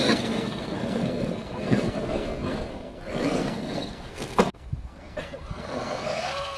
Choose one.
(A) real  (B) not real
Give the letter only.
B